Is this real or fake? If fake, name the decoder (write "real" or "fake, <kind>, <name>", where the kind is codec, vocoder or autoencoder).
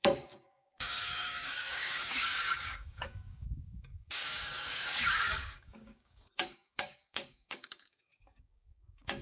fake, codec, DAC